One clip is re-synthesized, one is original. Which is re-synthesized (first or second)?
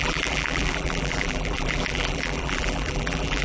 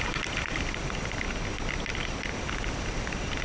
first